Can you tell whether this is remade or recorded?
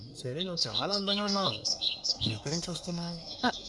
remade